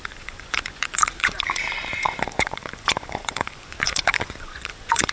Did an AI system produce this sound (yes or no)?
yes